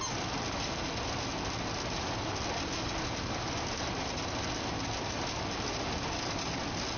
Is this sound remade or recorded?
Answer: recorded